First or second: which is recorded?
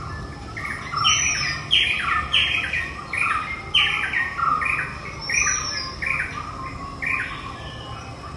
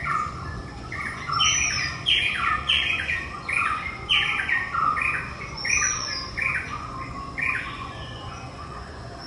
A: first